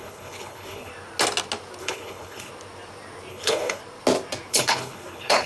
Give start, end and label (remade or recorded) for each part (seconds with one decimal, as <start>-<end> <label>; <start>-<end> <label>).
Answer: 0.0-0.9 remade; 0.9-1.8 recorded; 1.8-2.5 remade; 2.5-3.3 recorded; 3.3-3.8 remade; 3.8-4.5 recorded; 4.5-5.5 remade